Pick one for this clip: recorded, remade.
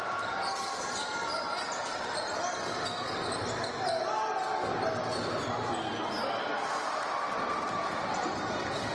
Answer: recorded